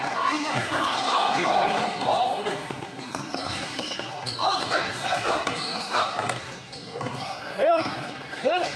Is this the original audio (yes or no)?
no